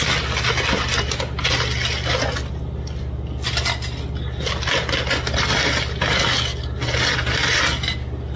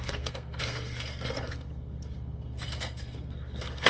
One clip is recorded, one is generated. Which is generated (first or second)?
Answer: second